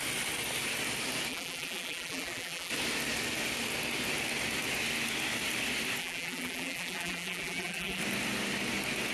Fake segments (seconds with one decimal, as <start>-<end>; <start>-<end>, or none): 1.3-2.7; 6.0-8.0